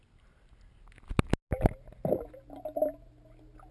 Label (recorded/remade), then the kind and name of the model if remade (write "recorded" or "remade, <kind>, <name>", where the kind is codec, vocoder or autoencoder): recorded